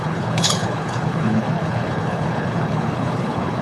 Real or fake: fake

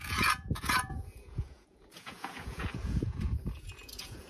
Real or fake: fake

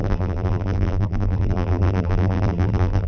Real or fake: fake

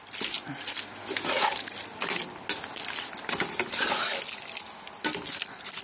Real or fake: real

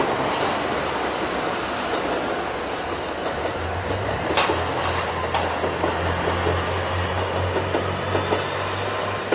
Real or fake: real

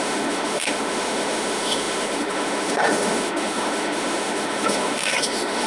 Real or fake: fake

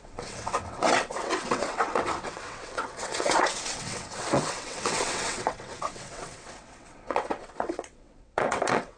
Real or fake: fake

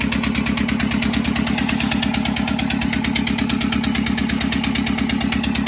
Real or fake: real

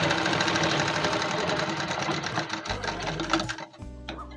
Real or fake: real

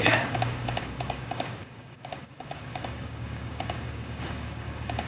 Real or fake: fake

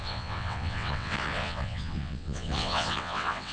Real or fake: fake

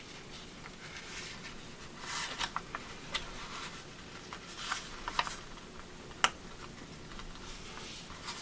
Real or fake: real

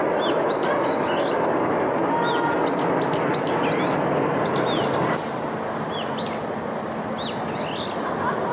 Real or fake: real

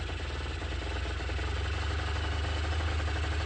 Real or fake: real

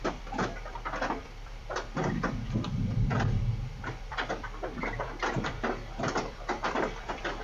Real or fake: fake